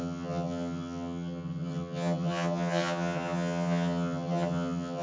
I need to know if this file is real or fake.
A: fake